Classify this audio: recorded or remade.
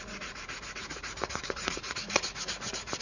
remade